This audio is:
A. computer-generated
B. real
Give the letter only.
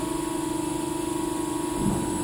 B